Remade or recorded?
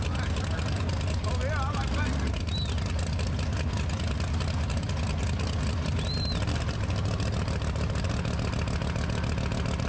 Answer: recorded